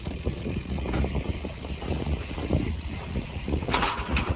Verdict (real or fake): fake